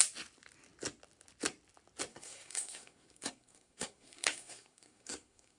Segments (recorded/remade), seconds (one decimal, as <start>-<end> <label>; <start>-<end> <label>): 0.0-2.1 recorded; 2.1-5.6 remade